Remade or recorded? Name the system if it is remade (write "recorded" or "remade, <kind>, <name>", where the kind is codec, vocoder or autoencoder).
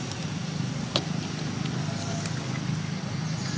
recorded